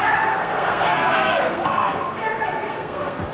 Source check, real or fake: fake